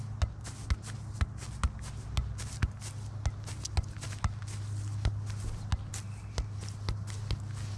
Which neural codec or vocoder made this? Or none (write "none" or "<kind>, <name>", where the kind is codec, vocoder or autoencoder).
none